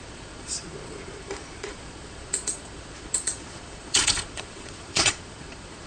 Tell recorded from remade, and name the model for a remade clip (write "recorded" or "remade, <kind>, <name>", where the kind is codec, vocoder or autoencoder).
remade, vocoder, Vocos